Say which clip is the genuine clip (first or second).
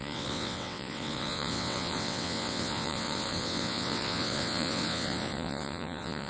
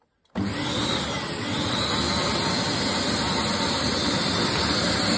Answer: second